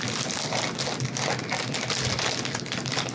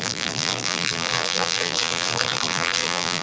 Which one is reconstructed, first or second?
second